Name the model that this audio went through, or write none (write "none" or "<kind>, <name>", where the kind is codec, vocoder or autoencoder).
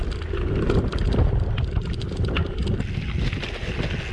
none